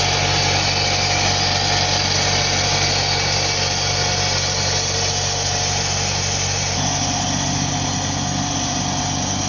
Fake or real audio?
real